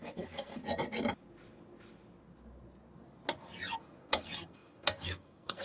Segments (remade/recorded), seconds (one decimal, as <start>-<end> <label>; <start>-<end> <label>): 0.0-0.6 remade; 0.6-4.0 recorded; 4.0-5.6 remade